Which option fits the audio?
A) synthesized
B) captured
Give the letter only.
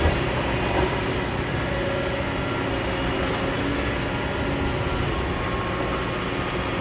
B